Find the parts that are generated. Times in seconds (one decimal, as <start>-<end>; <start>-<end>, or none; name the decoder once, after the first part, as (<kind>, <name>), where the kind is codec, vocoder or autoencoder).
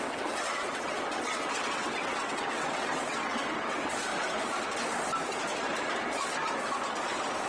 0.0-4.1 (vocoder, WaveNeXt)